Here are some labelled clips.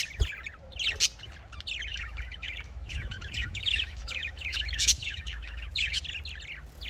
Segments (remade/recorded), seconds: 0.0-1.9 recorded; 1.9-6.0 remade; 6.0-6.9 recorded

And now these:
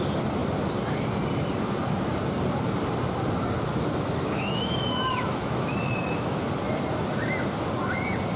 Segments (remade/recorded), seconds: 0.0-3.7 recorded; 3.7-6.4 remade; 6.4-8.4 recorded

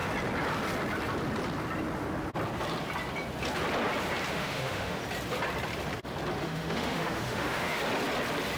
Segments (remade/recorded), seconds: 0.0-4.3 recorded; 4.3-5.0 remade; 5.0-6.4 recorded; 6.4-7.8 remade; 7.8-8.6 recorded

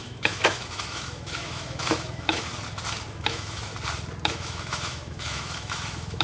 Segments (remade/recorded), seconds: 0.0-2.5 remade; 2.5-3.1 recorded; 3.1-3.7 remade; 3.7-4.3 recorded; 4.3-6.2 remade

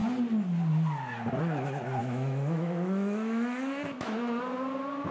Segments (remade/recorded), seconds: 0.0-2.0 recorded; 2.0-4.4 remade; 4.4-5.1 recorded